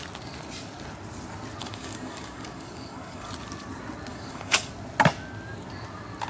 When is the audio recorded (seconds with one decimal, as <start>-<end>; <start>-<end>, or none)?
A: 0.0-1.6; 3.3-4.1; 4.7-6.3